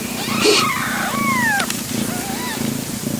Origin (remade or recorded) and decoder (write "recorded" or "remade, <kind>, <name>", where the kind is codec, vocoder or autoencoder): recorded